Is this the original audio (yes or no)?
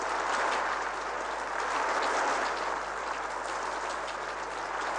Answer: yes